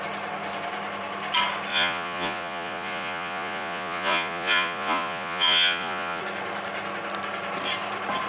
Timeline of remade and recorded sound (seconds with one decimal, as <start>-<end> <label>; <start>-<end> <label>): 0.0-1.7 recorded; 1.7-6.2 remade; 6.2-8.3 recorded